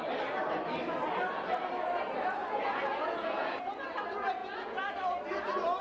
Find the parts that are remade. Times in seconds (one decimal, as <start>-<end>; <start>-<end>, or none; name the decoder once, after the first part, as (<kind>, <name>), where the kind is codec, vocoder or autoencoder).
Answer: 2.4-3.9 (vocoder, Vocos); 4.4-4.9